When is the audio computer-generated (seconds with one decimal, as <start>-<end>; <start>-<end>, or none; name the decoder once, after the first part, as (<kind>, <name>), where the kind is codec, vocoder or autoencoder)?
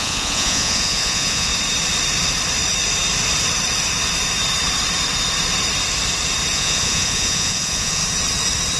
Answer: 0.0-1.5 (vocoder, Vocos); 6.5-8.0